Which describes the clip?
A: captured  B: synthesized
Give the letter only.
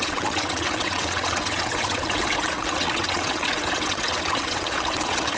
B